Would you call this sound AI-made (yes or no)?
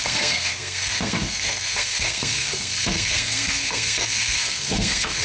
yes